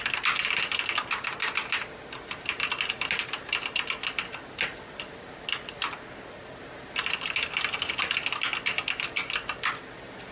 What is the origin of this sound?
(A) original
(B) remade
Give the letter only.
A